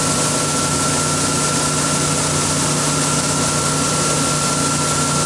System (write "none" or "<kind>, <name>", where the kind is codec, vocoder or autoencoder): none